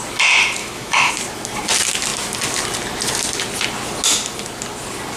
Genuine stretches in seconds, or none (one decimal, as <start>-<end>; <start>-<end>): 0.0-0.6; 1.1-5.2